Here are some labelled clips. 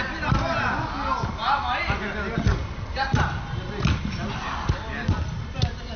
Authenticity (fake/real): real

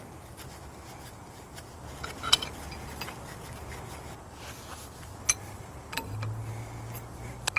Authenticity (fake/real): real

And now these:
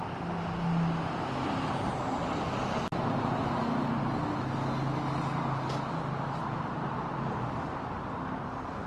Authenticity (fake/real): real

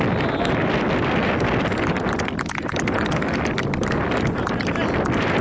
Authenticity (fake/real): real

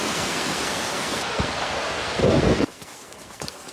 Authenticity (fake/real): fake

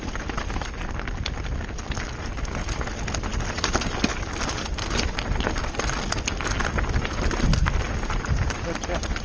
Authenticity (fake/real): real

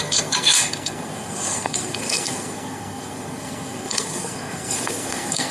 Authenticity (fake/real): fake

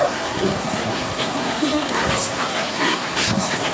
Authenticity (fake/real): fake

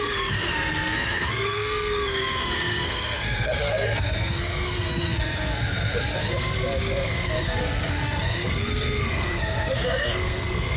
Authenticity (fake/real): fake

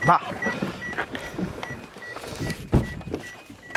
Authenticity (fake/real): real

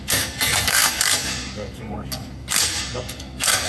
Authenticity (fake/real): fake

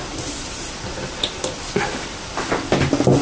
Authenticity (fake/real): real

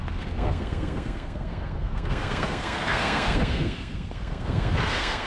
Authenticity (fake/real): fake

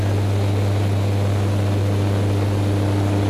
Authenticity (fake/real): real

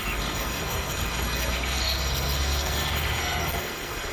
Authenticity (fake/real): fake